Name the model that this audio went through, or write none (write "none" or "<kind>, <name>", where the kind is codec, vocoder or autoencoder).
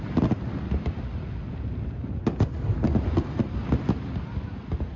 none